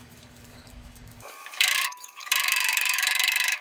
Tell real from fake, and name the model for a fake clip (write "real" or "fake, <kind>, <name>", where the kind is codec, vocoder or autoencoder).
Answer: fake, codec, DAC